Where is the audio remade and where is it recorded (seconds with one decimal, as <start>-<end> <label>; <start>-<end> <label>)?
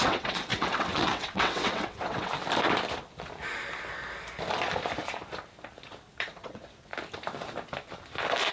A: 0.0-2.3 remade; 2.3-6.2 recorded; 6.2-6.9 remade; 6.9-8.5 recorded